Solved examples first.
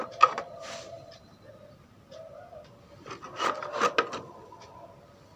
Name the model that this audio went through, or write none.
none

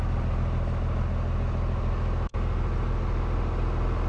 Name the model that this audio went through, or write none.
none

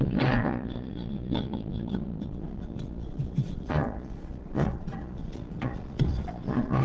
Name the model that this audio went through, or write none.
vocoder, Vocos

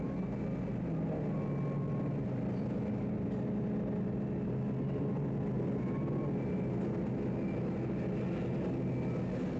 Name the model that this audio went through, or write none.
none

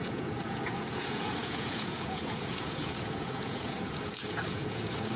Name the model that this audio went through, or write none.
vocoder, Vocos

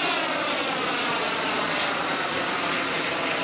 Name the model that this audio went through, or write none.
none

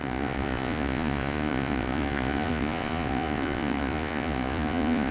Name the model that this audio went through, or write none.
vocoder, Vocos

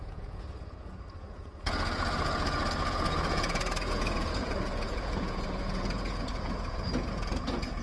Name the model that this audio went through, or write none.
vocoder, Vocos